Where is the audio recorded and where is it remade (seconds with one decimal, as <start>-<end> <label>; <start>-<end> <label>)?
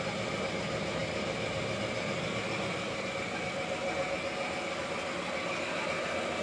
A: 0.0-6.4 recorded